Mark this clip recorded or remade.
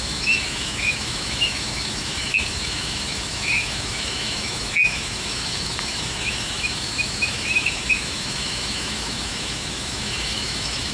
remade